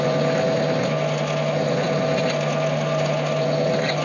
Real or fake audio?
real